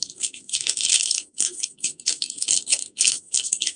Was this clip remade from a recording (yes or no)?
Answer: yes